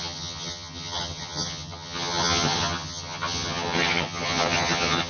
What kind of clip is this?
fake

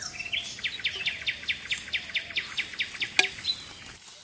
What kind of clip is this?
real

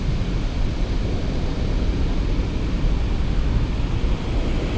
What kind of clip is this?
real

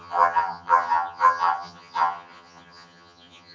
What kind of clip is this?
fake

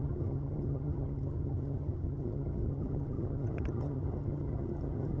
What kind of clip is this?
fake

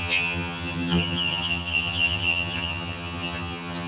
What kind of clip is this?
fake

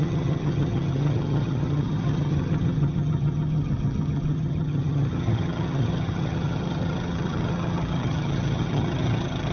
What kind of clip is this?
fake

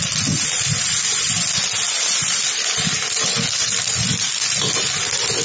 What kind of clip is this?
real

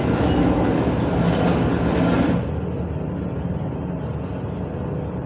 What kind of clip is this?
real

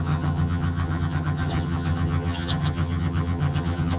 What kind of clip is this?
fake